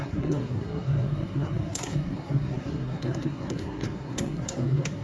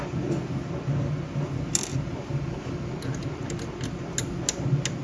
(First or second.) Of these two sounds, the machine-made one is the first